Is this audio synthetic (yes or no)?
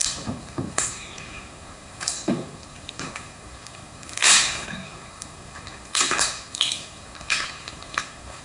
yes